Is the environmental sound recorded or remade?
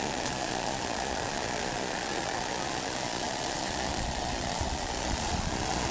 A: remade